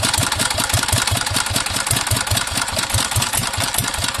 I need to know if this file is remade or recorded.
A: recorded